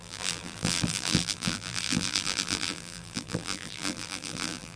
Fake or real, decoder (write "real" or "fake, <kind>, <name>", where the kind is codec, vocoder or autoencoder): fake, vocoder, BigVGAN v2